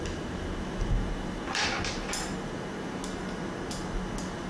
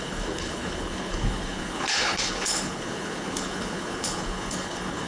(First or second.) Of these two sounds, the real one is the first